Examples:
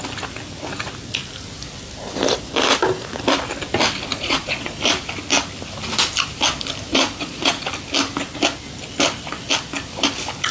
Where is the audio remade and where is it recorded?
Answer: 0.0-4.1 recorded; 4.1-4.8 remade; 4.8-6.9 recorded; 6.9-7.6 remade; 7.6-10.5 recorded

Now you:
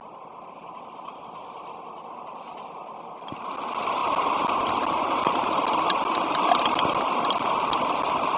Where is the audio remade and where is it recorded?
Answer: 0.0-8.4 recorded

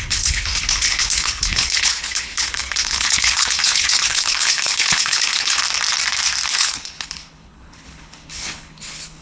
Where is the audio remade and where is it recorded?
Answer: 0.0-5.6 remade; 5.6-6.5 recorded; 6.5-9.2 remade

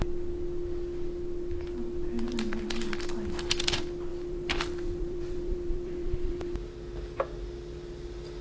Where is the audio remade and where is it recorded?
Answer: 0.0-4.1 recorded; 4.1-6.5 remade; 6.5-8.4 recorded